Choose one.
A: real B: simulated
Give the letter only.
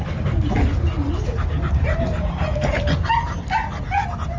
A